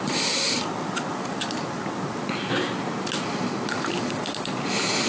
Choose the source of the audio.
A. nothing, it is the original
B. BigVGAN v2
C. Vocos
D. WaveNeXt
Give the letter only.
A